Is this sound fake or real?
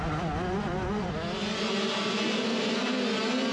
real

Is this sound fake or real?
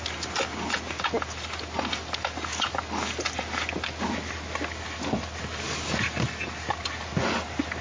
real